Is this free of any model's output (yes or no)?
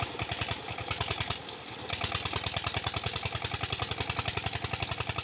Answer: yes